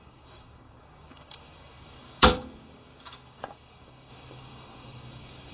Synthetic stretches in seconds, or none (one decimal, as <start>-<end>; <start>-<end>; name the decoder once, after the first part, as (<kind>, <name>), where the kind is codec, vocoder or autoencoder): 0.0-5.5 (codec, DAC)